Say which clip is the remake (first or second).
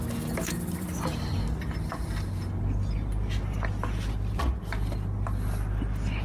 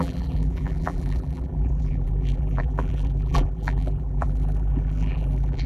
second